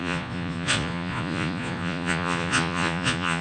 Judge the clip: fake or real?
fake